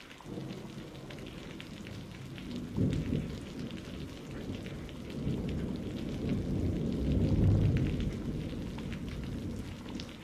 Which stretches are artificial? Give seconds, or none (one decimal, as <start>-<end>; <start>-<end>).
none